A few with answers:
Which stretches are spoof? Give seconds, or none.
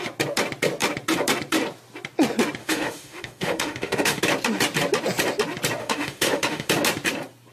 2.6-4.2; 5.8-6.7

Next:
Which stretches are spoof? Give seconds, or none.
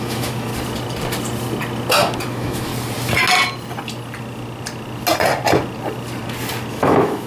0.0-0.5; 2.3-2.7; 6.7-7.3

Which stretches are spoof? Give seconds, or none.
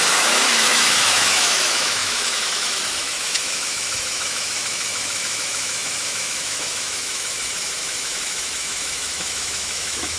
0.0-10.2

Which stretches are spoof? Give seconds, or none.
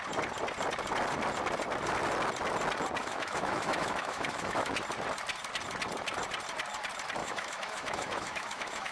3.0-4.7; 7.2-8.9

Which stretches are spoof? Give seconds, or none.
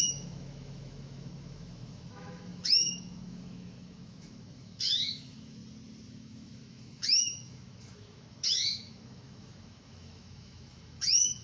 0.0-5.6; 6.1-11.4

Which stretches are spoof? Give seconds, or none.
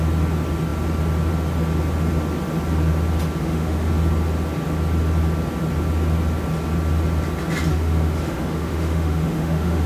3.4-3.9; 7.7-9.9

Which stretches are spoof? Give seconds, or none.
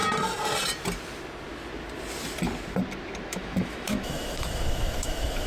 3.3-5.5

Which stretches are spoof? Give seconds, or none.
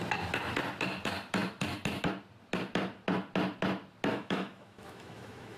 4.1-5.6